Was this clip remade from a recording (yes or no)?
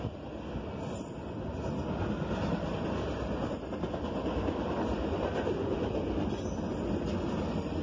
no